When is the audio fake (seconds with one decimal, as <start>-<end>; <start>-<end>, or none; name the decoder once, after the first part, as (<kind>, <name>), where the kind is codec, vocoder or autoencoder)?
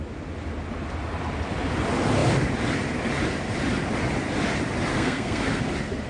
4.9-5.6 (codec, SNAC)